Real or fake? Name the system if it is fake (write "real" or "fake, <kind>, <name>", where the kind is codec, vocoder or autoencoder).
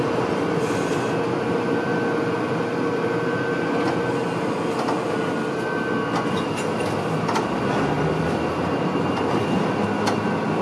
real